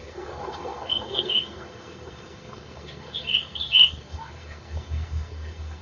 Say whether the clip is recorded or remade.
remade